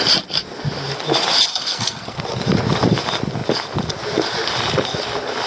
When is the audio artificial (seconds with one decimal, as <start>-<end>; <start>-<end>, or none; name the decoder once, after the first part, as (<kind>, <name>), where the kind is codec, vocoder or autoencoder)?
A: 1.5-2.2 (codec, SNAC)